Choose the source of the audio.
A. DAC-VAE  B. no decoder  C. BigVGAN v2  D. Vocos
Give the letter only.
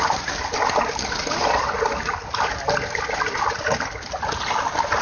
B